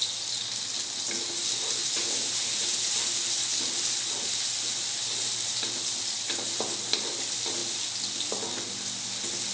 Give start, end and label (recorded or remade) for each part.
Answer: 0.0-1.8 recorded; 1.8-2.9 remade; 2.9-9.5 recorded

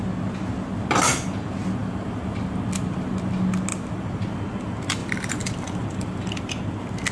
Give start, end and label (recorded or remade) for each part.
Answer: 0.0-1.8 recorded; 1.8-3.3 remade; 3.3-3.7 recorded; 3.7-4.3 remade; 4.3-5.0 recorded; 5.0-6.5 remade; 6.5-7.1 recorded